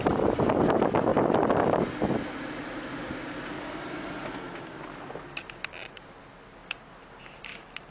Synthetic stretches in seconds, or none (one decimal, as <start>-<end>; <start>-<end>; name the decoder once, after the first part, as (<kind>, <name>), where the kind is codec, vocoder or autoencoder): none